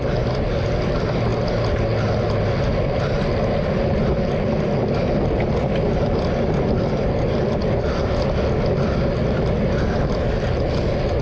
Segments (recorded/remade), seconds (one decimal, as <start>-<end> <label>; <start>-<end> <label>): 0.0-11.2 recorded